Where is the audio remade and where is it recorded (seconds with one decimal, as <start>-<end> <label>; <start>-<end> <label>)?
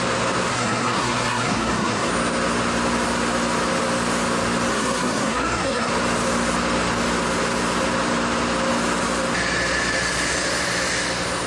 0.0-0.5 recorded; 0.5-2.1 remade; 2.1-4.7 recorded; 4.7-5.9 remade; 5.9-11.5 recorded